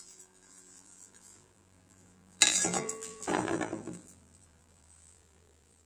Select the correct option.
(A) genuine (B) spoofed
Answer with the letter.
B